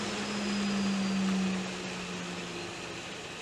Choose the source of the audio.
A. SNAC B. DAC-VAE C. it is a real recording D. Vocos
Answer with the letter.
C